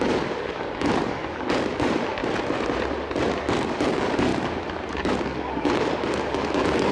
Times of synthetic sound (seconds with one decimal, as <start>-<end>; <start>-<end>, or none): 0.0-2.2; 3.4-4.3; 4.9-6.9